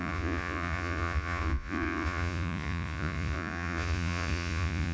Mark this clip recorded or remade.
remade